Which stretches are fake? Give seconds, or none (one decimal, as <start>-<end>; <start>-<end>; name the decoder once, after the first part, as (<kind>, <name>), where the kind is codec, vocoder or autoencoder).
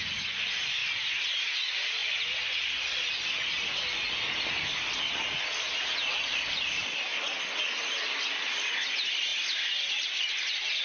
none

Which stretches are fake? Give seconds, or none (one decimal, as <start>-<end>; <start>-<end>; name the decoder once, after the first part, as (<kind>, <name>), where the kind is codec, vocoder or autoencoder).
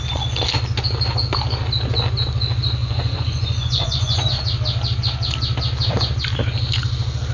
2.8-4.4 (vocoder, Vocos)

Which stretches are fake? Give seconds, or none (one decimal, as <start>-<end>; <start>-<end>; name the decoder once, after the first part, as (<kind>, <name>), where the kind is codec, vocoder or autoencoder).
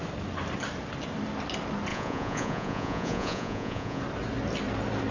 1.9-4.0 (vocoder, Vocos)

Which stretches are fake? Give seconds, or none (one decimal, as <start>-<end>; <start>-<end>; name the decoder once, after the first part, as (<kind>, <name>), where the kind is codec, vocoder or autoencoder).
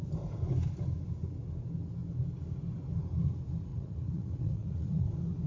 3.7-5.0 (vocoder, Vocos)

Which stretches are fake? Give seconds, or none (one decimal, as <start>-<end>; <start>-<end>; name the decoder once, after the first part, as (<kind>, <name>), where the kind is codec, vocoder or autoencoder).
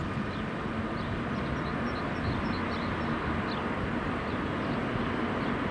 none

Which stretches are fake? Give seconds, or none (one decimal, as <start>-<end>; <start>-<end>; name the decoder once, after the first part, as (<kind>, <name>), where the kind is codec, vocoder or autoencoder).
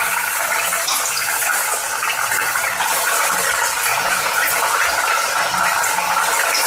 3.9-4.6 (vocoder, Vocos)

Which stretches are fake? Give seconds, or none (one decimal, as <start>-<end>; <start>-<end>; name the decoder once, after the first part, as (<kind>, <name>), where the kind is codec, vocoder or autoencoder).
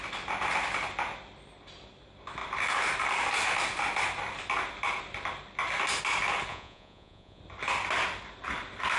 6.5-7.4 (vocoder, Vocos)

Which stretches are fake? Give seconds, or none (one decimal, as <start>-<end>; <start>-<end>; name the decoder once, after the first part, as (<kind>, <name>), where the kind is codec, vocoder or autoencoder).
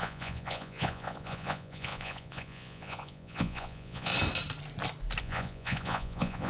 0.0-4.1 (vocoder, Vocos); 5.2-6.5